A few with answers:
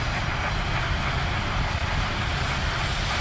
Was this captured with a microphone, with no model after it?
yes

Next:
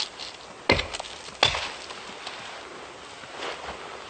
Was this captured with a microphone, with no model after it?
yes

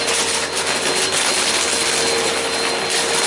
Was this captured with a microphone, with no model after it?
yes